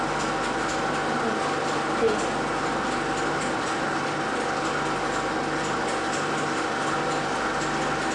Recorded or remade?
recorded